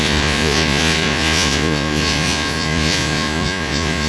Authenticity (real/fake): fake